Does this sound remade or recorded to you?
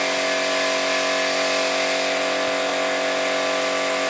recorded